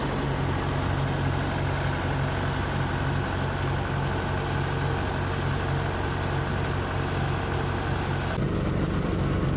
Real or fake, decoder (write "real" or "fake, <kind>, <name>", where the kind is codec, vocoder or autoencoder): real